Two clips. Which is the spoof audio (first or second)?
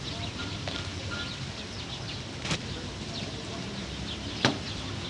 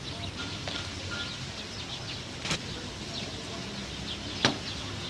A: first